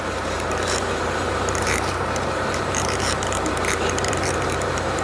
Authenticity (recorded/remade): remade